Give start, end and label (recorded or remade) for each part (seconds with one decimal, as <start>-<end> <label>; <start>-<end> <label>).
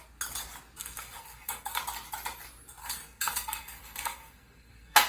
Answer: 0.0-0.8 recorded; 0.8-1.8 remade; 1.8-2.8 recorded; 2.8-5.1 remade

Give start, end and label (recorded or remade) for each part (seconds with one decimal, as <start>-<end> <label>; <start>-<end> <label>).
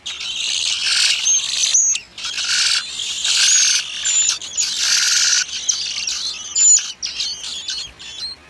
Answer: 0.0-8.5 recorded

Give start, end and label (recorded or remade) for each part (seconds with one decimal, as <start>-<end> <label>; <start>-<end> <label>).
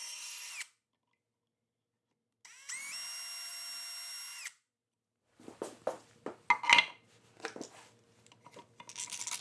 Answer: 0.0-0.5 remade; 0.5-9.4 recorded